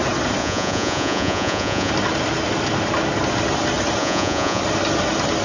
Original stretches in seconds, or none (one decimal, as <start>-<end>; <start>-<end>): 0.0-0.4; 1.9-4.0; 4.6-5.4